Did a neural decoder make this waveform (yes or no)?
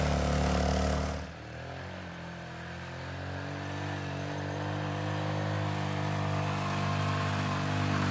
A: no